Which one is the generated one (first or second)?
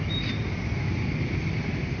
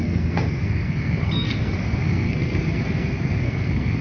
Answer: second